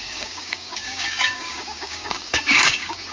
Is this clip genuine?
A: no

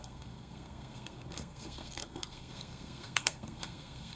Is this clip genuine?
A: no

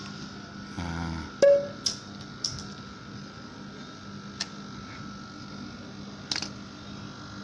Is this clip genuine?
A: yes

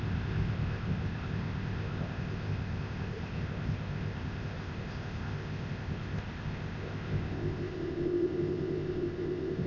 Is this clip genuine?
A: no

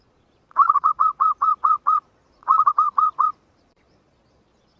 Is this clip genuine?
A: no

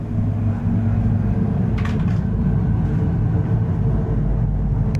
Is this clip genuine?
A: yes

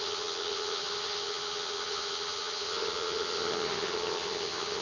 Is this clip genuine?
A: no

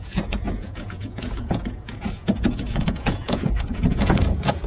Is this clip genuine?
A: no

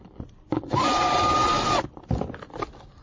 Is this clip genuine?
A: yes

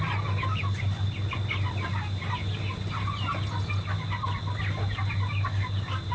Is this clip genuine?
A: yes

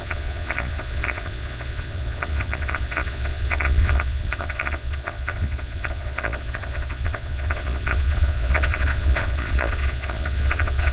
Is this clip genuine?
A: no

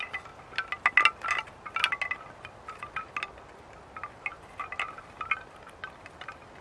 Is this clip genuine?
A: yes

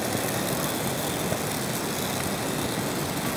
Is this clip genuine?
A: yes